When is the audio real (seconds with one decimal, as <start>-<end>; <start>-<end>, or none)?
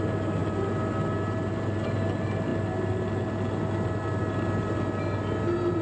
0.0-5.8